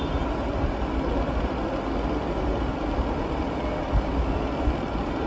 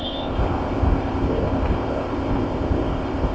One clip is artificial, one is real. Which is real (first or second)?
first